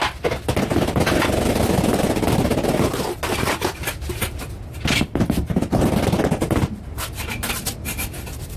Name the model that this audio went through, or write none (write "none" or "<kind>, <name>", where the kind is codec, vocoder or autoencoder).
none